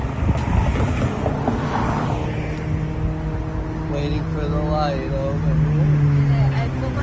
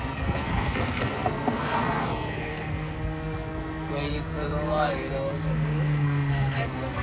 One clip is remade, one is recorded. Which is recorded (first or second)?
first